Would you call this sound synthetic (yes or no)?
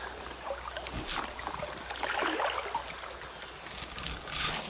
no